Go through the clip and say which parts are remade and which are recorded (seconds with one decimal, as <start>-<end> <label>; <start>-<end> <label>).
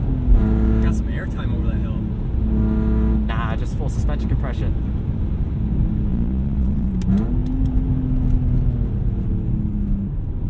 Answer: 0.0-6.1 recorded; 6.1-6.9 remade; 6.9-10.5 recorded